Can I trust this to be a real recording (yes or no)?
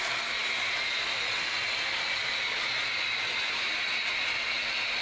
yes